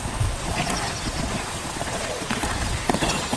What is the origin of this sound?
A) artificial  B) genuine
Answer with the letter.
A